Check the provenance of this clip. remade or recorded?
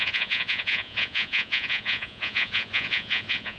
remade